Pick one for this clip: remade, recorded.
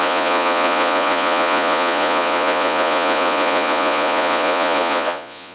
remade